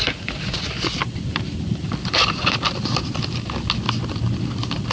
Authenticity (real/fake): real